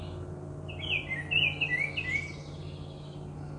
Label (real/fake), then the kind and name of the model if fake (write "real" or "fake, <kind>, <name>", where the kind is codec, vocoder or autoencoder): real